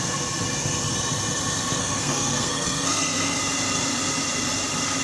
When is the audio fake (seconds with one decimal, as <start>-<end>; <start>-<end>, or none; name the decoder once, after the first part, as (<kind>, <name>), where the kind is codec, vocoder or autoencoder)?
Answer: 1.8-3.4 (codec, SNAC)